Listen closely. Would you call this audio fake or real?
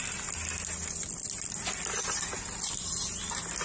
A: real